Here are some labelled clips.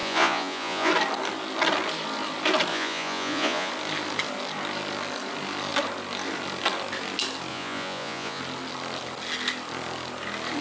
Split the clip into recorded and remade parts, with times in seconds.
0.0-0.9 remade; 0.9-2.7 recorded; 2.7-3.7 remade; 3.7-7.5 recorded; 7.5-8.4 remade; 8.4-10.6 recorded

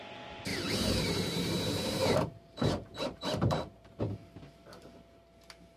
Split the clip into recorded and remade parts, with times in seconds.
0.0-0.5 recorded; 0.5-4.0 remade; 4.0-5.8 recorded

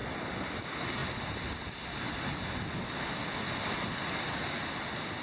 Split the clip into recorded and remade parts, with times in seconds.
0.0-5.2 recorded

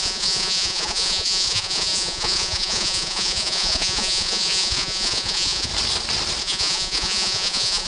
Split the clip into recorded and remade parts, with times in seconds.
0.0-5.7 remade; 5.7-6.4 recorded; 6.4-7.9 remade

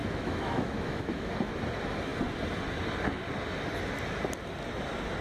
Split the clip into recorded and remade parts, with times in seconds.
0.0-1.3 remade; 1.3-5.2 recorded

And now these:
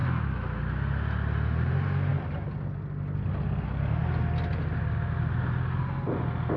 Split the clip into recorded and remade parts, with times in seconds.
0.0-0.6 remade; 0.6-6.6 recorded

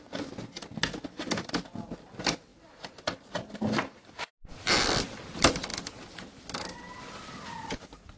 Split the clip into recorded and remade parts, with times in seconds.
0.0-8.2 recorded